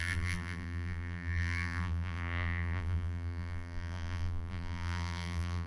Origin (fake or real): fake